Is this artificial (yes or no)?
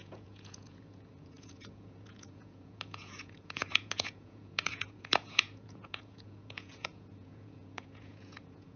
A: yes